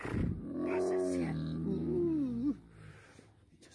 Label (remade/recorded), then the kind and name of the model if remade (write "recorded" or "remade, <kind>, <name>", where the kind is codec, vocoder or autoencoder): recorded